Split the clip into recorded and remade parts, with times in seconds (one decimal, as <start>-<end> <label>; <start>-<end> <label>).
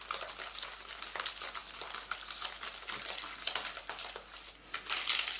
0.0-5.4 recorded